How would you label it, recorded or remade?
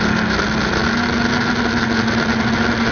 recorded